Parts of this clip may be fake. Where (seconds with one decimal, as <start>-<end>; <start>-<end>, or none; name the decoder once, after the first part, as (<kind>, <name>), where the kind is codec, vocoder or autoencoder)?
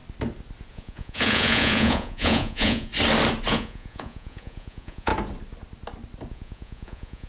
0.7-2.9 (vocoder, Vocos); 3.5-5.1; 6.3-7.3